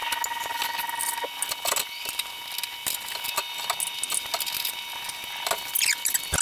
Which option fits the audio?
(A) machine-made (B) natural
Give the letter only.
B